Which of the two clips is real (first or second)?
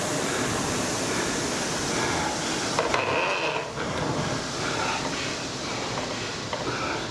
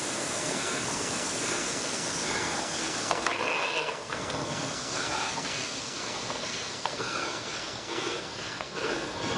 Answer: first